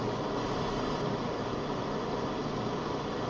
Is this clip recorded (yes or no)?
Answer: yes